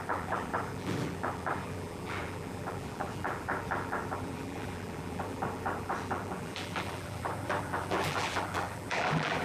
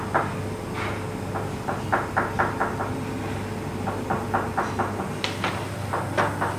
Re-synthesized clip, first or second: first